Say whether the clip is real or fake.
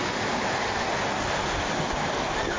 real